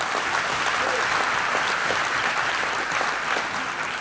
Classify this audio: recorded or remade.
recorded